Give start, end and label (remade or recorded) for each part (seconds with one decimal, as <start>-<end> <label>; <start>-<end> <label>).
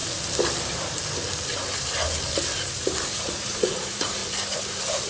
0.0-3.1 recorded; 3.1-4.2 remade; 4.2-5.1 recorded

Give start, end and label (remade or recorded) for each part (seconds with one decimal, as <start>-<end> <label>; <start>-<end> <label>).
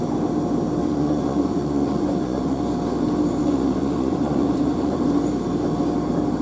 0.0-0.8 recorded; 0.8-2.6 remade; 2.6-3.4 recorded; 3.4-5.0 remade; 5.0-6.4 recorded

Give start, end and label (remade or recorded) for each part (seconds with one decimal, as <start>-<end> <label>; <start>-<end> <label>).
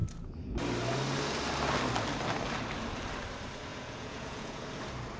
0.0-3.7 recorded; 3.7-4.6 remade; 4.6-5.2 recorded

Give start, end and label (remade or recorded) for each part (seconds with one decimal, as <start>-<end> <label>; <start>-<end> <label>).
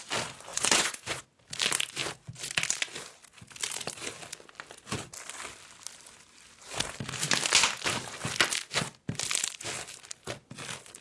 0.0-0.5 recorded; 0.5-1.2 remade; 1.2-11.0 recorded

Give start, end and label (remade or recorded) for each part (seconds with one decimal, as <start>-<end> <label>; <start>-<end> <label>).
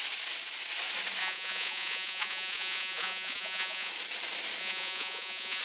0.0-1.2 recorded; 1.2-3.9 remade; 3.9-4.6 recorded; 4.6-5.6 remade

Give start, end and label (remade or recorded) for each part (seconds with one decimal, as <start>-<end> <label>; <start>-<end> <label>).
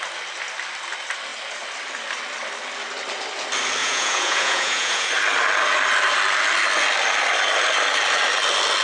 0.0-3.8 recorded; 3.8-5.1 remade; 5.1-8.8 recorded